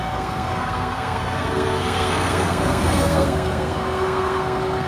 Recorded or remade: remade